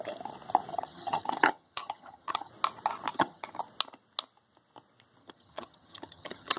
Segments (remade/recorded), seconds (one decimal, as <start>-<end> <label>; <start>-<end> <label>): 0.0-0.7 recorded; 0.7-2.5 remade; 2.5-3.1 recorded; 3.1-3.6 remade; 3.6-5.2 recorded; 5.2-6.6 remade